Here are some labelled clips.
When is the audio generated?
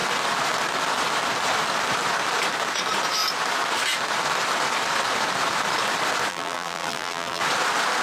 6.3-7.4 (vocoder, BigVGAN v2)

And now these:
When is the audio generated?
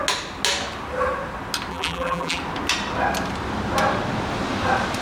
1.7-2.4 (vocoder, BigVGAN v2)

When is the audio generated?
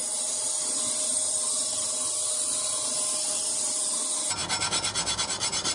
none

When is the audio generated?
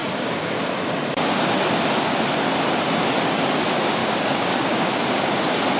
0.0-0.7 (codec, DAC); 4.0-4.9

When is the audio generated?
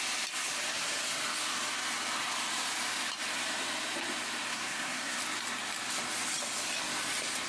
4.5-5.2 (codec, SNAC)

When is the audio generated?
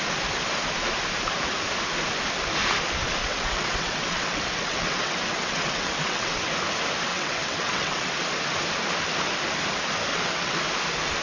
3.2-6.5 (vocoder, WaveNeXt); 7.1-8.1; 10.1-10.6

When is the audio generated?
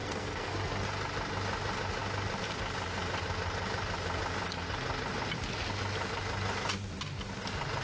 0.0-0.5 (codec, SNAC)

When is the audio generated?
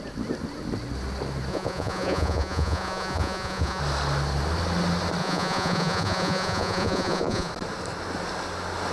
1.5-3.8 (vocoder, Vocos); 5.2-7.5